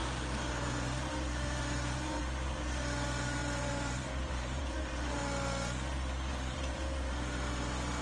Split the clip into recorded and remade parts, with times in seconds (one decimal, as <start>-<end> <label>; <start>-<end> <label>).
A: 0.0-5.2 remade; 5.2-6.3 recorded; 6.3-8.0 remade